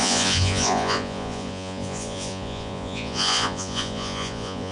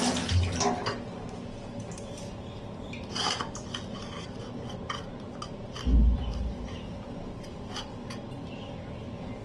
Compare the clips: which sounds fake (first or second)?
first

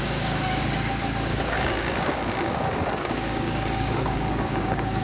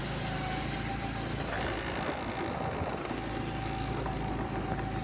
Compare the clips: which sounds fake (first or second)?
first